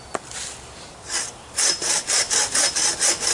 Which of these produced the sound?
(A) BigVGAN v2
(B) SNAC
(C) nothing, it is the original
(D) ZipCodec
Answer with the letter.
C